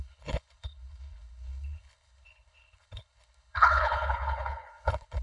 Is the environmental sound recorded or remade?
remade